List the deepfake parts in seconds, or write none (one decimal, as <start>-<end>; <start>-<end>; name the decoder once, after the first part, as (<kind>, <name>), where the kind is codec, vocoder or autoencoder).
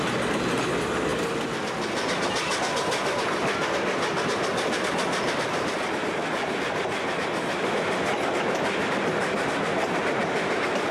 none